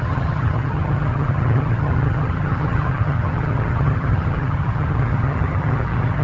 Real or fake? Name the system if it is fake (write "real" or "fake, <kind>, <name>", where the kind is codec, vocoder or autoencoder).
fake, vocoder, HiFi-GAN